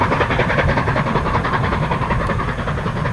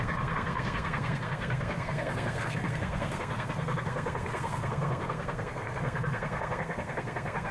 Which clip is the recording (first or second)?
first